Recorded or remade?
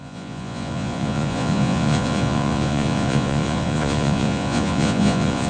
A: remade